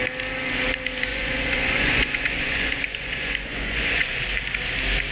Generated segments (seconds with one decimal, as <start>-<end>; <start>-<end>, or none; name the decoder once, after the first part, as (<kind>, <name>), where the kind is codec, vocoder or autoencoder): 1.1-4.2 (vocoder, Vocos)